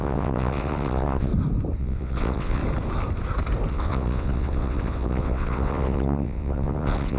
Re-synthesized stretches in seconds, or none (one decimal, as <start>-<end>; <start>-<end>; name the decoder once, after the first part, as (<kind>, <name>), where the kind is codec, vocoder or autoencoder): 0.0-1.3 (vocoder, WaveNeXt); 1.8-2.6; 3.7-7.2